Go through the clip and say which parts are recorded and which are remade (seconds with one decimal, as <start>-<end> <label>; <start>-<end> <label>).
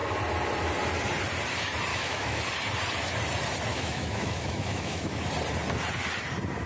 0.0-1.9 recorded; 1.9-2.4 remade; 2.4-3.7 recorded; 3.7-5.3 remade; 5.3-6.7 recorded